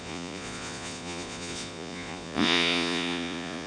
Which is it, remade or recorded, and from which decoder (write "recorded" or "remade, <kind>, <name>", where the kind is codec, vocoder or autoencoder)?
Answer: remade, vocoder, Vocos